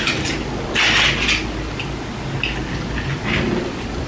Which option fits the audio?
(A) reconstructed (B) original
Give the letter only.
B